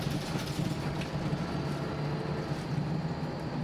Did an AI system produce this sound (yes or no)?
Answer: no